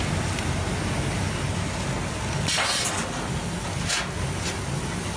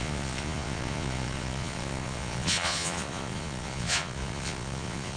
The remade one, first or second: second